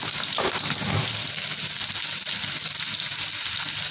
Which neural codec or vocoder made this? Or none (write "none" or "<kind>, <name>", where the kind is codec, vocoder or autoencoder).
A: none